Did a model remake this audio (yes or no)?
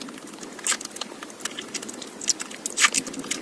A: no